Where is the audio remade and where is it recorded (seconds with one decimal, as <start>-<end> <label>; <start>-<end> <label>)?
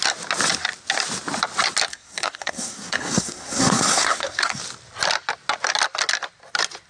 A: 0.0-1.9 recorded; 1.9-4.6 remade; 4.6-6.9 recorded